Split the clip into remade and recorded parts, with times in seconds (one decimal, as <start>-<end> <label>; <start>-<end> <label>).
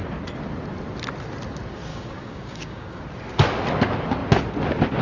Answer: 0.0-1.9 recorded; 1.9-3.0 remade; 3.0-5.0 recorded